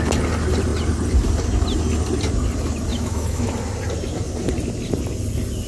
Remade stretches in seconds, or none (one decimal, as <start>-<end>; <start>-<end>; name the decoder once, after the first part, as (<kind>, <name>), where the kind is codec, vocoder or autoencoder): 2.9-3.5 (autoencoder, DAC-VAE)